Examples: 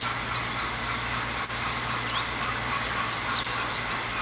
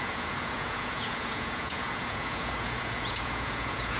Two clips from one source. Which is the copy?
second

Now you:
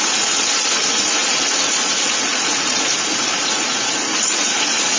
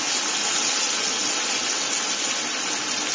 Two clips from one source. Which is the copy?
first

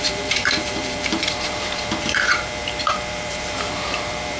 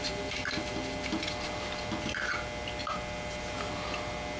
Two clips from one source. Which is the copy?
first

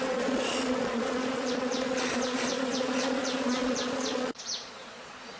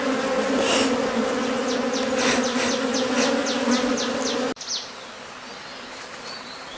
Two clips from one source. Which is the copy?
first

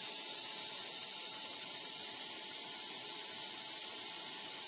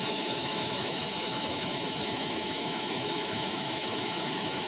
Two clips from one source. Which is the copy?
second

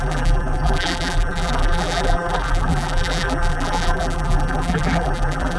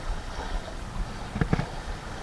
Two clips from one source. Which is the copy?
first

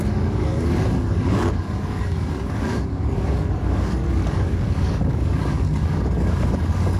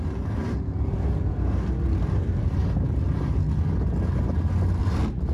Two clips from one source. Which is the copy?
first